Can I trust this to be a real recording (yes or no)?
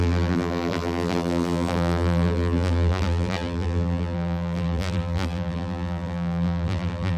no